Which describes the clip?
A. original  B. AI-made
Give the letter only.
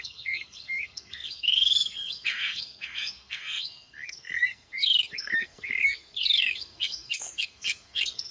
B